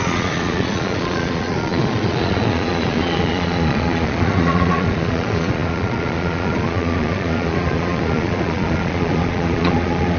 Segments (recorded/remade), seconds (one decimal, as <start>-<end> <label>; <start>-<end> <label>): 0.0-10.2 remade